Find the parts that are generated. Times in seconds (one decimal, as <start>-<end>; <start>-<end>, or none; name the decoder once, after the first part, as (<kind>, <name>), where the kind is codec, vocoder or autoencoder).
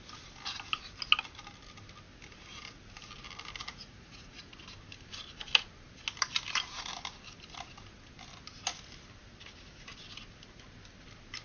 3.6-4.5 (vocoder, Vocos)